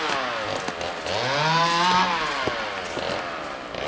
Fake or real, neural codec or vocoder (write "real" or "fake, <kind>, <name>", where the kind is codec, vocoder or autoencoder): real